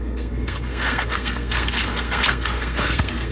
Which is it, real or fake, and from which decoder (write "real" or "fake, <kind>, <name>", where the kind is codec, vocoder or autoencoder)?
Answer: fake, codec, SNAC